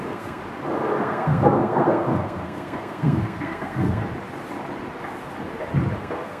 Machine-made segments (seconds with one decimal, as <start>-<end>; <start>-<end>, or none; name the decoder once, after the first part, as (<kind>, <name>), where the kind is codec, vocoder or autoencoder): 0.0-0.4 (codec, SNAC); 1.0-4.0; 6.0-6.4